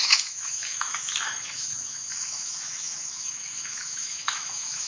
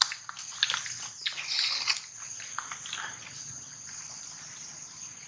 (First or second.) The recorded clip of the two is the second